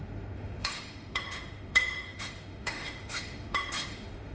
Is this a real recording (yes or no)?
no